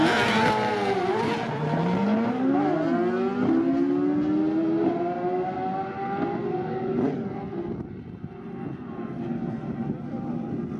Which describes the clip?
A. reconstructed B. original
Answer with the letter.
B